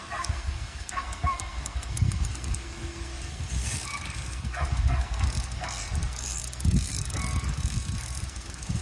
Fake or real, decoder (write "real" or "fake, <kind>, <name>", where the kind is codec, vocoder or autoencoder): fake, codec, SNAC